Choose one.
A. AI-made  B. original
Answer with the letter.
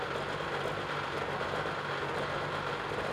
B